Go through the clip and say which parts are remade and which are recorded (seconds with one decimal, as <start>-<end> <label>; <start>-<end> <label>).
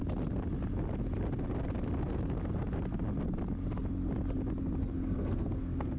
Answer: 0.0-4.8 recorded; 4.8-6.0 remade